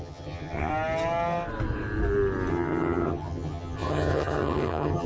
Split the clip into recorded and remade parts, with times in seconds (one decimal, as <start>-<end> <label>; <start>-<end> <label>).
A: 0.0-0.7 remade; 0.7-2.5 recorded; 2.5-5.1 remade